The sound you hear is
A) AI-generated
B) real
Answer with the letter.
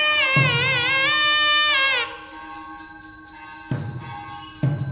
B